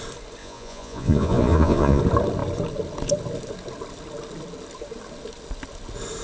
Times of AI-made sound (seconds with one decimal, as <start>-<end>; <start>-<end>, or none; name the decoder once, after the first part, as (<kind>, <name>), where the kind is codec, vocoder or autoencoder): 0.4-2.0 (vocoder, Vocos)